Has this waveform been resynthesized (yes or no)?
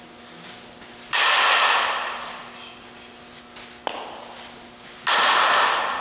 no